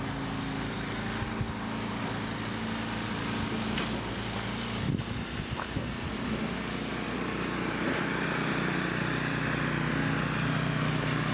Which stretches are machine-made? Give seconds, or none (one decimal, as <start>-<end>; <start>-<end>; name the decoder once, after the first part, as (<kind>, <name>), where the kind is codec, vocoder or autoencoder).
6.9-9.9 (vocoder, BigVGAN v2)